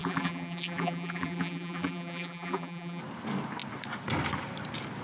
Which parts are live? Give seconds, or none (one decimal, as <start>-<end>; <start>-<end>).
3.0-5.0